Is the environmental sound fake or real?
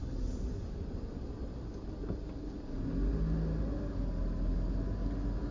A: real